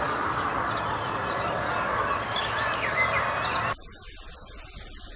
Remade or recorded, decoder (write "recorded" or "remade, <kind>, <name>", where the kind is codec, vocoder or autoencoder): recorded